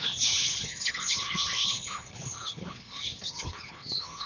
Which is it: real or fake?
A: fake